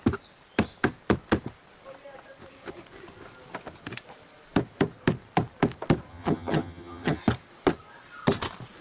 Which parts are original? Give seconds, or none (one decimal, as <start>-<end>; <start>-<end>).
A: 0.0-6.1; 7.2-8.8